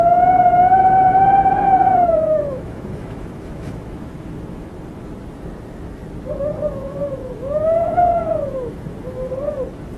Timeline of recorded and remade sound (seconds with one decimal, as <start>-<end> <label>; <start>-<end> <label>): 0.0-1.8 recorded; 1.8-4.7 remade; 4.7-6.7 recorded; 6.7-9.3 remade; 9.3-10.0 recorded